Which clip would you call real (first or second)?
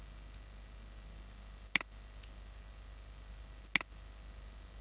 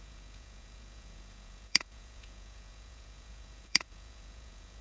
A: first